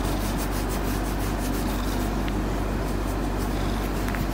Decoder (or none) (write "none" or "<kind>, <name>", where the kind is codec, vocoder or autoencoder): none